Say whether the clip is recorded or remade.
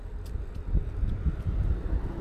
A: recorded